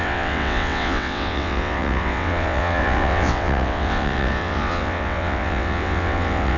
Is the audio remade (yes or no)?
yes